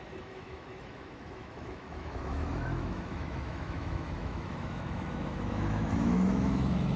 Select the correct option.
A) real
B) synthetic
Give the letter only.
B